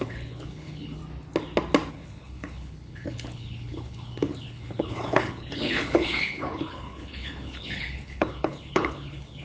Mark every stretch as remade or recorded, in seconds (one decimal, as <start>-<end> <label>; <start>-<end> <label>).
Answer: 0.0-1.0 remade; 1.0-1.9 recorded; 1.9-9.4 remade